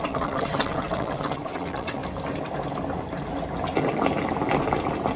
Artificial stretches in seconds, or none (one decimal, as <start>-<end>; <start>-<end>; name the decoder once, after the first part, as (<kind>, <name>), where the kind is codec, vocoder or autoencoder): 0.0-2.0 (vocoder, WaveNeXt)